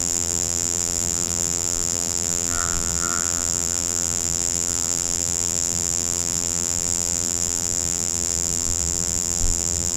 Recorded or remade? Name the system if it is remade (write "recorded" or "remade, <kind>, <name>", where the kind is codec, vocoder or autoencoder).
remade, vocoder, BigVGAN v2